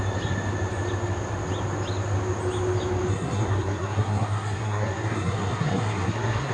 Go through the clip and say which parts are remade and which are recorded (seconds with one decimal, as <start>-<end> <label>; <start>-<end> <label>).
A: 0.0-3.1 recorded; 3.1-6.5 remade